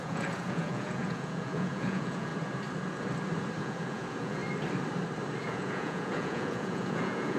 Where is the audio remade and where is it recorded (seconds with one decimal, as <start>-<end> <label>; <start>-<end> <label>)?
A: 0.0-2.3 remade; 2.3-3.6 recorded; 3.6-4.4 remade; 4.4-5.4 recorded; 5.4-7.4 remade